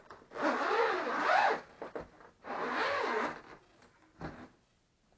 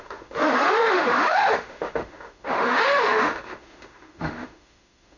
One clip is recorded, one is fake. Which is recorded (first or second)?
first